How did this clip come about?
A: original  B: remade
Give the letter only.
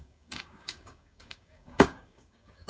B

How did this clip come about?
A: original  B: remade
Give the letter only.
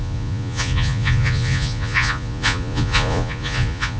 B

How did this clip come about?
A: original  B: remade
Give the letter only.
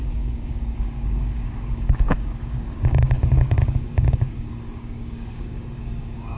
B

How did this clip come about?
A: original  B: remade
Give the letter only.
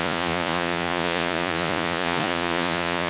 B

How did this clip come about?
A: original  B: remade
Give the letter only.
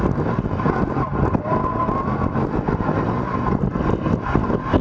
A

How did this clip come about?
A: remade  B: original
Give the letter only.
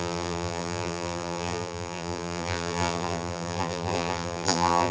A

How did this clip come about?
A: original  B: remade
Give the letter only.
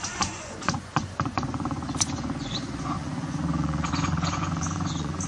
B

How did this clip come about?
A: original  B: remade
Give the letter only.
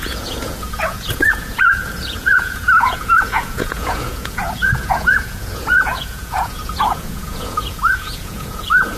B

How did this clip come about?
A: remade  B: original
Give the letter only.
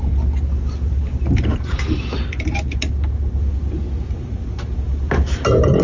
B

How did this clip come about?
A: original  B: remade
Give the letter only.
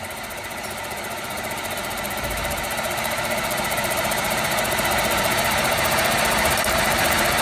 B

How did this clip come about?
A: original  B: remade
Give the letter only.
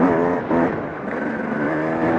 A